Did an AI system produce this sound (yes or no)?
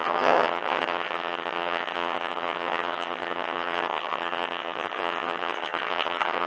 yes